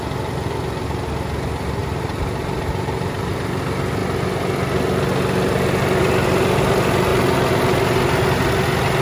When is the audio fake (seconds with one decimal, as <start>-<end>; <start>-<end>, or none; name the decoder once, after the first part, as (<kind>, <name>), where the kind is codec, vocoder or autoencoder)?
1.8-3.3 (vocoder, BigVGAN v2)